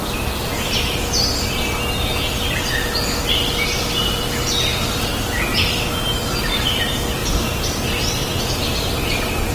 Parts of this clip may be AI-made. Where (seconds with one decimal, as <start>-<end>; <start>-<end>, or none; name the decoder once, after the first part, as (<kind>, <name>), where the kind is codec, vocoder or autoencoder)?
none